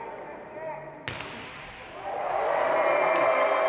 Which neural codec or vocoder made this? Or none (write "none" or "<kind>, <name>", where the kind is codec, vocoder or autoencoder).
none